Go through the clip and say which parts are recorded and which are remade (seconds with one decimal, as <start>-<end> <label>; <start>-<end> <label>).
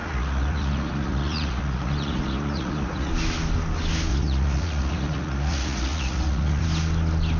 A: 0.0-3.1 remade; 3.1-4.1 recorded; 4.1-6.6 remade; 6.6-7.4 recorded